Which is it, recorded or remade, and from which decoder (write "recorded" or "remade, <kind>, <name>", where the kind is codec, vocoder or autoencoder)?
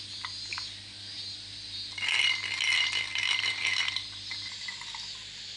recorded